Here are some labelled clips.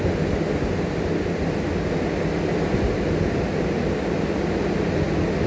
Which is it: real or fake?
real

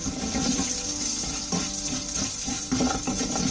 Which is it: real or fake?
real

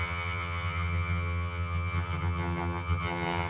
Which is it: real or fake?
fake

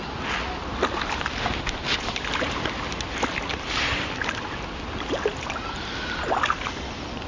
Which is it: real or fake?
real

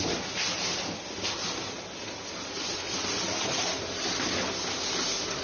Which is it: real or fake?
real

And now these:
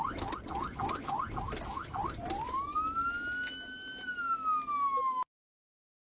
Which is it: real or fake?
real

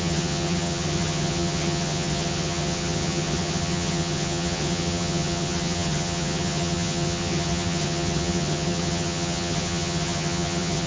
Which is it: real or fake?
fake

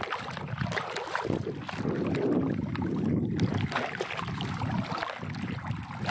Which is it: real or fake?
real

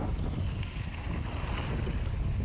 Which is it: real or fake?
real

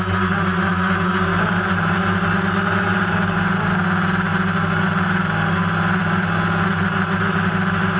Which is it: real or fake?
real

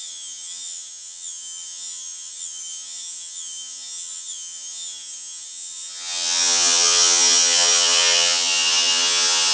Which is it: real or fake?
fake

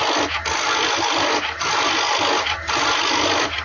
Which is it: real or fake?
real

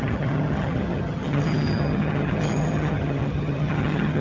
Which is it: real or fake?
fake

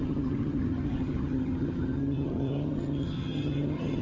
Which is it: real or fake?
fake